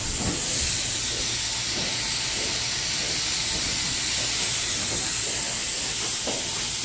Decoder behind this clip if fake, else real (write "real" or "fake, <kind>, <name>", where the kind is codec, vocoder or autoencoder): real